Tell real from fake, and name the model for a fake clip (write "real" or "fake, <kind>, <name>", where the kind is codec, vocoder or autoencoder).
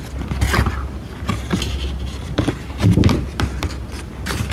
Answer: real